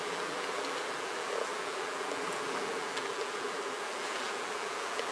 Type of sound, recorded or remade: remade